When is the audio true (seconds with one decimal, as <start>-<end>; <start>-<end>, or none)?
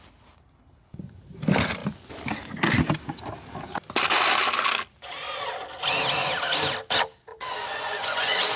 0.0-7.3